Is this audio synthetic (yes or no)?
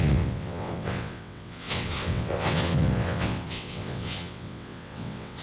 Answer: yes